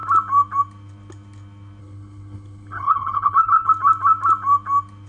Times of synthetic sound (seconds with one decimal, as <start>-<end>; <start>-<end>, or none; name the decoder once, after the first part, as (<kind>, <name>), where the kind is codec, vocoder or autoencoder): 1.8-3.7 (codec, HILCodec)